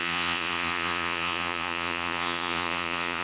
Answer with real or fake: fake